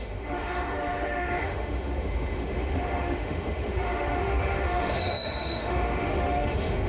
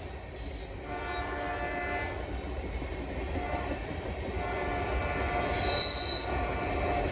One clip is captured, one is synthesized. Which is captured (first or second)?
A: second